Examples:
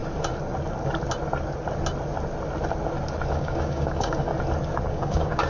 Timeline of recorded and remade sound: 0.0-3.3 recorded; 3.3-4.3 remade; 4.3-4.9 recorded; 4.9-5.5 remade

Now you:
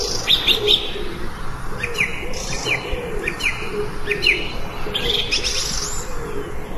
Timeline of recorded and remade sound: 0.0-2.6 recorded; 2.6-3.4 remade; 3.4-6.8 recorded

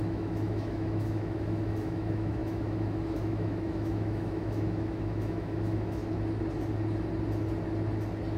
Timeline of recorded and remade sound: 0.0-6.0 remade; 6.0-8.4 recorded

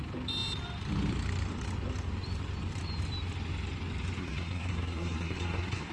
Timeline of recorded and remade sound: 0.0-4.2 recorded; 4.2-5.9 remade

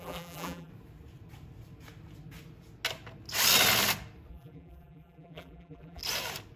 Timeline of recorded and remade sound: 0.0-0.7 remade; 0.7-4.3 recorded; 4.3-6.0 remade; 6.0-6.6 recorded

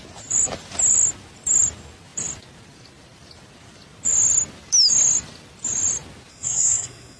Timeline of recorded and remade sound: 0.0-6.3 recorded; 6.3-7.2 remade